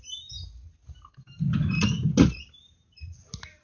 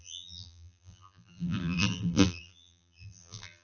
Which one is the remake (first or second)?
second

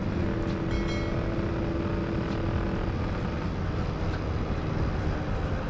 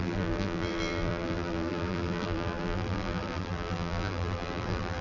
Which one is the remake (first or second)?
second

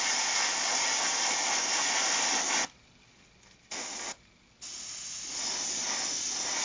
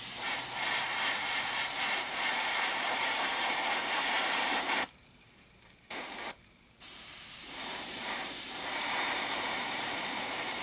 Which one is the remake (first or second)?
second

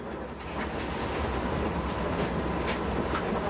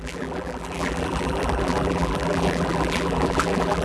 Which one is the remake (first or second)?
second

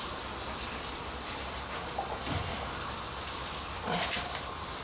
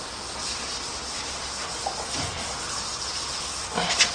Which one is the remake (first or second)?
first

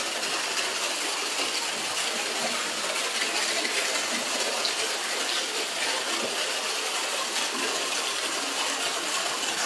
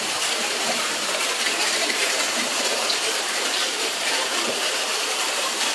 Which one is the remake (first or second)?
second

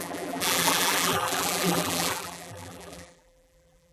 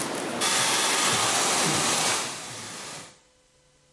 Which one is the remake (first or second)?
first